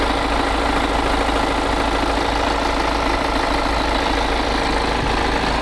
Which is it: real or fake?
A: real